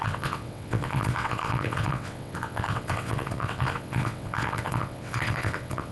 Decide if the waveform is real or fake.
fake